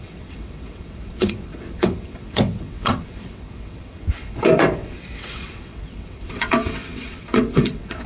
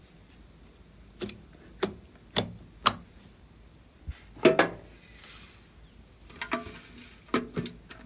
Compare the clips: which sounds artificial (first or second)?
first